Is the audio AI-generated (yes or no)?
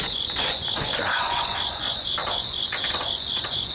yes